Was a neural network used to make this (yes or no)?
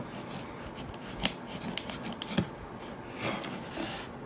no